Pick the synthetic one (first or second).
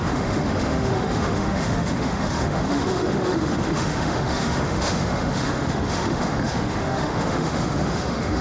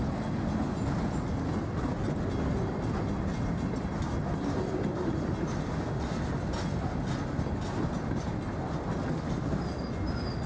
first